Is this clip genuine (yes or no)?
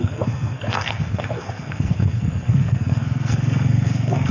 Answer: no